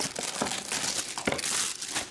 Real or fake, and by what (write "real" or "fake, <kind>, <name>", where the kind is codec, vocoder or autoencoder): real